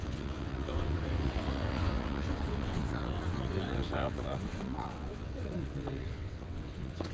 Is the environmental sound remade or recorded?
remade